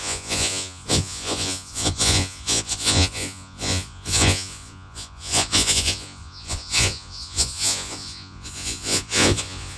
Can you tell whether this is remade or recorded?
remade